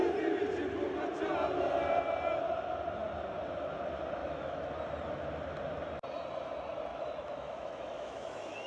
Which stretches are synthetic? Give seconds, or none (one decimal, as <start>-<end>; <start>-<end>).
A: 4.2-4.7; 6.9-8.7